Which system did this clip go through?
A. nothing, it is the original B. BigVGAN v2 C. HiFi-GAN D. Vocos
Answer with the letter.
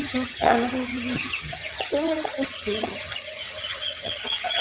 C